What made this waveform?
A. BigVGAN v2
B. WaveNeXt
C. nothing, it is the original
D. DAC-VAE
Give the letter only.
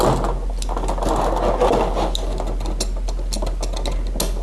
C